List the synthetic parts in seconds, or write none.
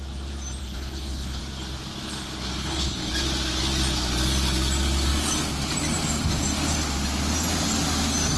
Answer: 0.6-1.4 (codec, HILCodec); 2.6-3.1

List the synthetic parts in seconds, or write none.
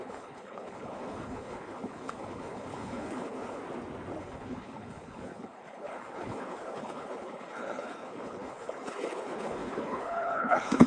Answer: 0.0-3.6 (codec, HILCodec); 4.2-10.9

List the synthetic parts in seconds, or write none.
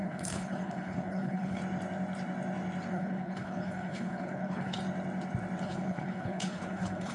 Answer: 0.0-1.6 (codec, HILCodec); 2.9-4.8; 5.6-7.1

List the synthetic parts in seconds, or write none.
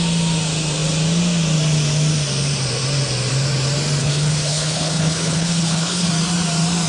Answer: 4.0-6.1 (codec, HILCodec)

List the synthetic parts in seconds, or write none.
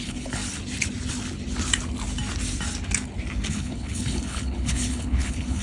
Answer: 0.0-0.4 (codec, HILCodec); 3.5-5.6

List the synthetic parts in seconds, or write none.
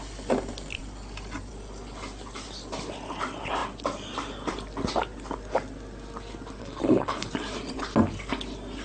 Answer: 6.6-7.3 (codec, HILCodec)